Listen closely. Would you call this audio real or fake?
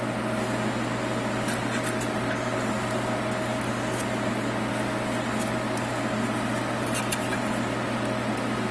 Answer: real